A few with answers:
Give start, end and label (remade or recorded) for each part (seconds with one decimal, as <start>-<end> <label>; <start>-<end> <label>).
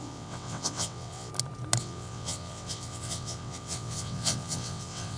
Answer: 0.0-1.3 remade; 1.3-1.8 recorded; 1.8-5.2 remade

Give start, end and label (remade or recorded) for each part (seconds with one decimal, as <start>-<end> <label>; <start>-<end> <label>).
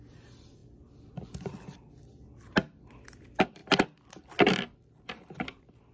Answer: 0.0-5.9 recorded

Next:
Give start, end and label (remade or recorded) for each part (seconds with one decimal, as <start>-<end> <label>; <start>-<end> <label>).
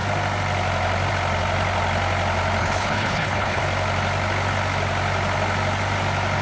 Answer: 0.0-2.6 recorded; 2.6-3.6 remade; 3.6-6.4 recorded